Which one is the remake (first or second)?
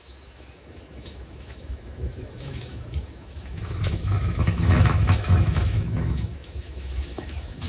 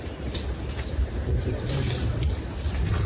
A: first